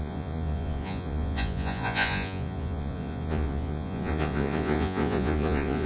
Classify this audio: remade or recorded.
remade